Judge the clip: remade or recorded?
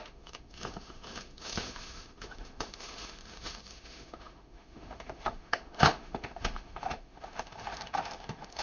remade